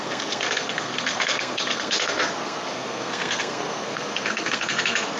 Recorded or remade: remade